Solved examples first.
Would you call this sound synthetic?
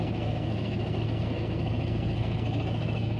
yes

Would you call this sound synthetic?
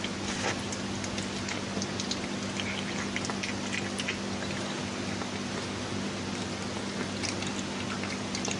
no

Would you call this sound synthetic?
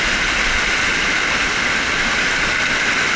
no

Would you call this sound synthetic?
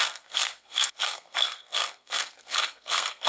yes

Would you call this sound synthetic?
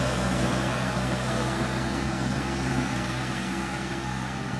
yes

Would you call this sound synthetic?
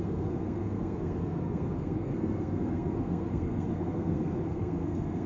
yes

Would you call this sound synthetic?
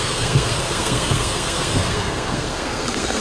yes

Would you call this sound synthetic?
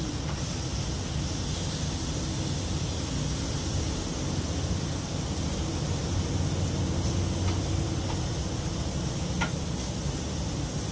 no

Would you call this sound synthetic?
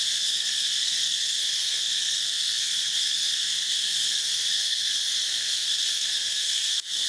yes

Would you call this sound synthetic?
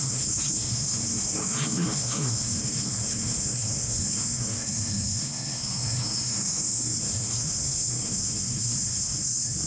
yes